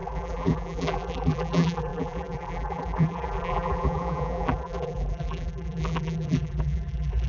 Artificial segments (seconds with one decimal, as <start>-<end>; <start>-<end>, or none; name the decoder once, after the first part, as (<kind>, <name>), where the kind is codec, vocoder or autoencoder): 0.0-7.3 (vocoder, BigVGAN v2)